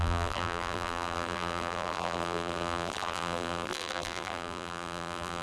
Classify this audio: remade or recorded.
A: remade